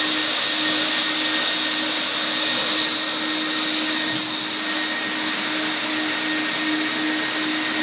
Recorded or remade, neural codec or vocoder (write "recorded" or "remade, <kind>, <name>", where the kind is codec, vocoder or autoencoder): recorded